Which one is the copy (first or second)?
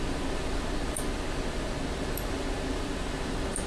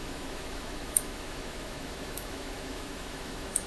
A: second